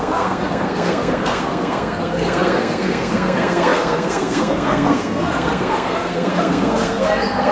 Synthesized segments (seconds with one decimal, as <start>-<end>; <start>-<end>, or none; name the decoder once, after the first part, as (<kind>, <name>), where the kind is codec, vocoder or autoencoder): 0.0-7.5 (codec, SNAC)